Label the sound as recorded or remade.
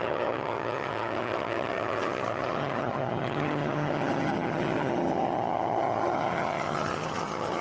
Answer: remade